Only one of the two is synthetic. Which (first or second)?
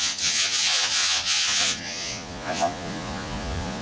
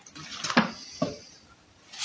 first